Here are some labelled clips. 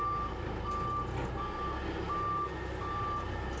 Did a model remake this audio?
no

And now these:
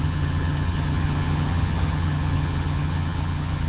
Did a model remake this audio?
yes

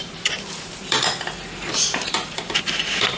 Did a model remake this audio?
yes